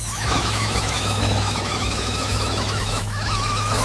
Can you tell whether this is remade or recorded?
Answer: remade